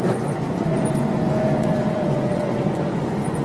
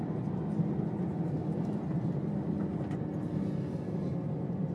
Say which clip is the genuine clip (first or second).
second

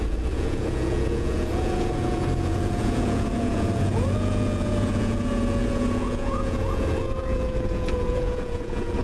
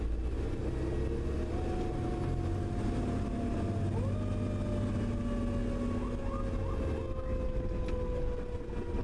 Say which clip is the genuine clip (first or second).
second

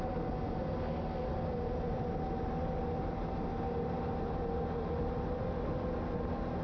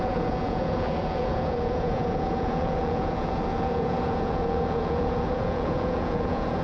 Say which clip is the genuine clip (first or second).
first